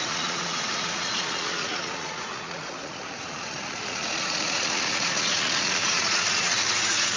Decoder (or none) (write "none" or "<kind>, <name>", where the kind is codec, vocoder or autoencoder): vocoder, Vocos